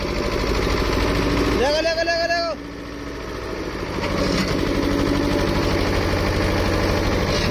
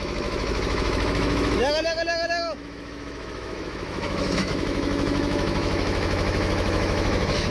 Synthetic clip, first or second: second